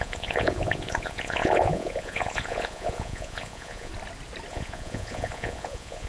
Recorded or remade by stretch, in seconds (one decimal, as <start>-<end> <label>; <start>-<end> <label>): 0.0-3.9 remade; 3.9-4.5 recorded; 4.5-6.1 remade